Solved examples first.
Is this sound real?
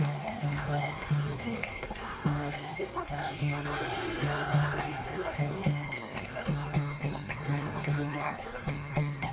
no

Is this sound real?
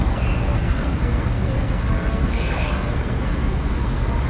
no